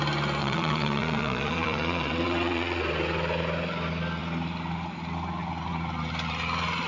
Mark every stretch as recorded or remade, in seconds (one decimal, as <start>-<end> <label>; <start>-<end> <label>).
0.0-0.4 recorded; 0.4-2.8 remade; 2.8-6.9 recorded